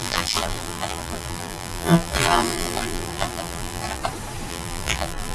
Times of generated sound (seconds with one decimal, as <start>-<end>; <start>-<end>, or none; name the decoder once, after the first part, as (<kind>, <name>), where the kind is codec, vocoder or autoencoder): 0.0-4.0 (vocoder, BigVGAN v2); 4.5-5.3